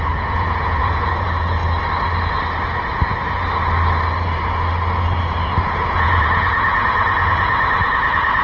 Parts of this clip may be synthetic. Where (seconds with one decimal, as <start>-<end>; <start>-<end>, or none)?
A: 0.0-1.6; 5.5-8.4

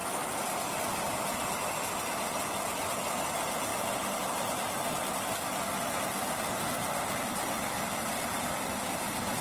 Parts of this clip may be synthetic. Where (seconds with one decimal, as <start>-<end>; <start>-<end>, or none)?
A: none